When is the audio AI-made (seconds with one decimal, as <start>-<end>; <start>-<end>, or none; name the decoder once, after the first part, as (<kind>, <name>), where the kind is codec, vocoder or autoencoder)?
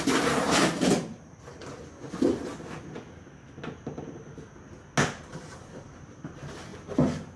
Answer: 0.0-1.6 (vocoder, BigVGAN v2); 5.3-6.7